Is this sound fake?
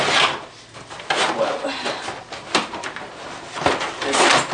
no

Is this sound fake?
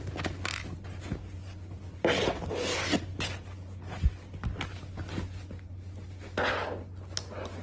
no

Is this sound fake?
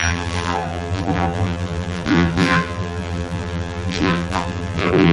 yes